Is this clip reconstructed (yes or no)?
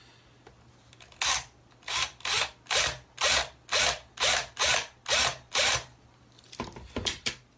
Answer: no